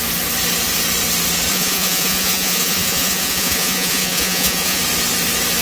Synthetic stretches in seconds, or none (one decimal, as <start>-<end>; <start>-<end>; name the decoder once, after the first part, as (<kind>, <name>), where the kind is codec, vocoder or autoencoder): 1.5-4.8 (vocoder, Vocos)

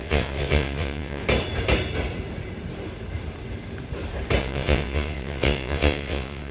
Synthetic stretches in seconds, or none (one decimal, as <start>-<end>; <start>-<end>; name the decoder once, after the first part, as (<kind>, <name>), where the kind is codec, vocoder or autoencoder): 0.0-1.2 (vocoder, WaveNeXt); 4.4-6.5

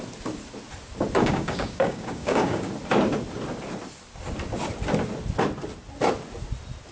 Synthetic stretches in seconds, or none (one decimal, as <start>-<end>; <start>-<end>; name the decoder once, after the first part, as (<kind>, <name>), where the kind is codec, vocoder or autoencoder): 1.2-2.7 (codec, DAC)

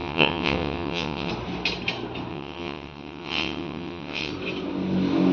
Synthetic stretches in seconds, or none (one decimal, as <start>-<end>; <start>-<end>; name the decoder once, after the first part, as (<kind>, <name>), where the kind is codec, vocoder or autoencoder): 0.0-1.3 (vocoder, WaveNeXt); 2.3-4.3

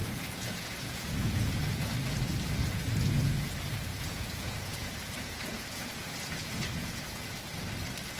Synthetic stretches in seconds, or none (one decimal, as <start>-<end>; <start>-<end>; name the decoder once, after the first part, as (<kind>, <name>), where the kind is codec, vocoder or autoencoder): 0.0-1.9 (vocoder, Vocos); 2.6-3.5; 3.9-7.2

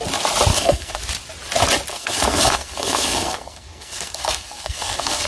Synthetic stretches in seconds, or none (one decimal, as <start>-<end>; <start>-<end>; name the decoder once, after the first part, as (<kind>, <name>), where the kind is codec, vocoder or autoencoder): 0.5-1.0 (codec, SNAC); 1.9-5.3

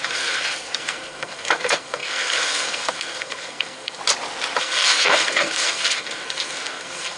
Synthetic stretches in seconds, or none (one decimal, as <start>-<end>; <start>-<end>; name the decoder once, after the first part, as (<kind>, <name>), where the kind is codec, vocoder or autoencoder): 0.0-4.0 (codec, SNAC); 4.6-7.2